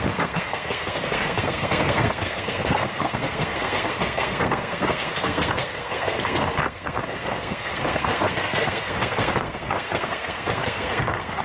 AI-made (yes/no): yes